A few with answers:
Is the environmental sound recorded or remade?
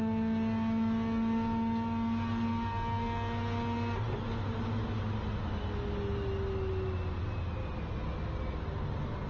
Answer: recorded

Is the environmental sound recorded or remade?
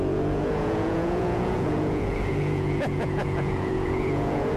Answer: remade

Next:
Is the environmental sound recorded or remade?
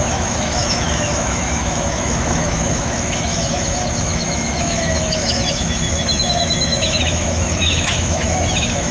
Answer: remade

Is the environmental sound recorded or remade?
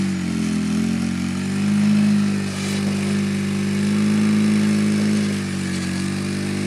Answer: recorded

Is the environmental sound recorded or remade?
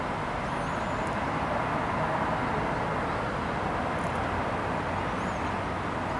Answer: recorded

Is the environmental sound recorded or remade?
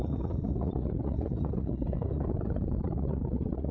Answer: remade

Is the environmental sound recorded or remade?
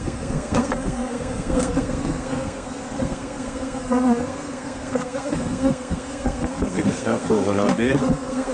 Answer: remade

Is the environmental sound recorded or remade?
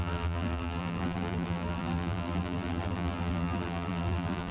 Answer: remade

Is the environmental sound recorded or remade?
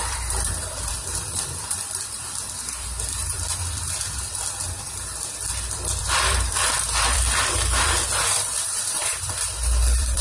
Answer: remade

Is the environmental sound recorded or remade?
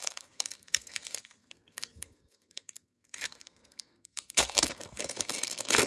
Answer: remade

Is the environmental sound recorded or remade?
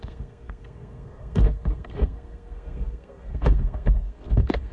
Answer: remade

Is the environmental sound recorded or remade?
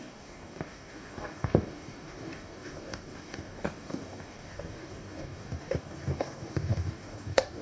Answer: remade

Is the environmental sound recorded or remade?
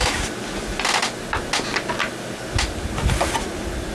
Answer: recorded